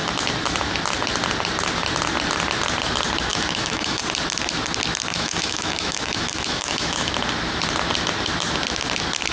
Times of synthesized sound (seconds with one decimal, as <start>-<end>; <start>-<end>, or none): 3.3-4.0; 5.1-7.1